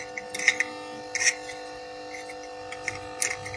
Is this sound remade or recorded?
recorded